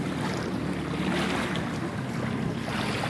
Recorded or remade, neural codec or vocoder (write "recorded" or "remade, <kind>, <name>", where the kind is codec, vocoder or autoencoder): recorded